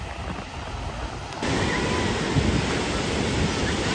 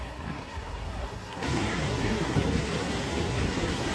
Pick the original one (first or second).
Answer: first